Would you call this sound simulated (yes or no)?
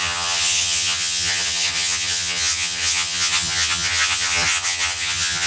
yes